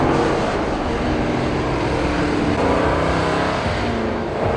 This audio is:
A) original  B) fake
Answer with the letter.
A